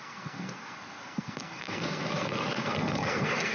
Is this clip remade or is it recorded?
remade